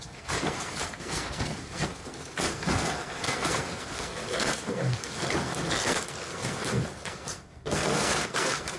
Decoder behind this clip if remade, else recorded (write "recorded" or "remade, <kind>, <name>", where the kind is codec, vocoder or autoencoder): remade, codec, SNAC